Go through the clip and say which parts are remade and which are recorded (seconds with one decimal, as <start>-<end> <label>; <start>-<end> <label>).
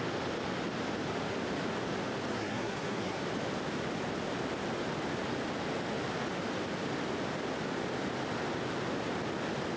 0.0-2.3 recorded; 2.3-3.2 remade; 3.2-9.8 recorded